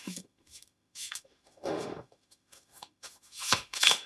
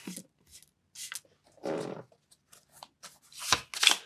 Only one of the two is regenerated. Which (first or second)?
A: first